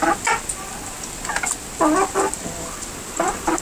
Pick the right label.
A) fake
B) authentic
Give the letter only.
B